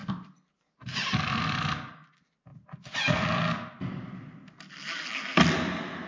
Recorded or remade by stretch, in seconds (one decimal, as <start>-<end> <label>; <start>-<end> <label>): 0.0-6.1 recorded

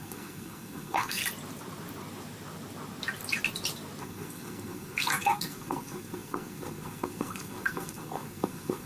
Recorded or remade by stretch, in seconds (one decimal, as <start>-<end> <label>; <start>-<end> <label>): 0.0-1.2 remade; 1.2-4.0 recorded; 4.0-8.9 remade

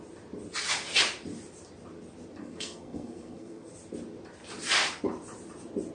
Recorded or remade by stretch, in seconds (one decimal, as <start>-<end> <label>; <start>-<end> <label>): 0.0-2.4 recorded; 2.4-3.7 remade; 3.7-5.9 recorded

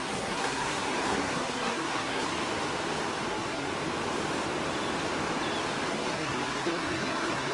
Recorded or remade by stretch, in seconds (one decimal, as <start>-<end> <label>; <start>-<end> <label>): 0.0-2.3 remade; 2.3-3.3 recorded; 3.3-3.7 remade; 3.7-5.9 recorded; 5.9-7.5 remade

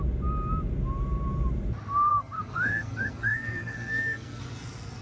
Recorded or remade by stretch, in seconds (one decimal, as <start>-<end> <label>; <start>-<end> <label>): 0.0-2.1 recorded; 2.1-4.4 remade; 4.4-5.0 recorded

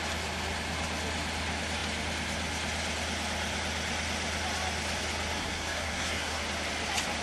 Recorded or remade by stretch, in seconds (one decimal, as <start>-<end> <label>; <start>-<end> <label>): 0.0-5.4 recorded; 5.4-6.4 remade; 6.4-7.2 recorded

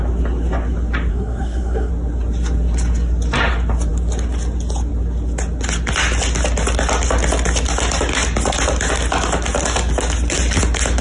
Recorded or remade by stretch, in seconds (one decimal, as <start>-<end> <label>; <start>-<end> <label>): 0.0-1.1 recorded; 1.1-1.9 remade; 1.9-11.0 recorded